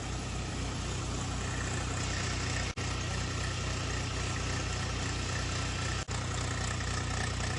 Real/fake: real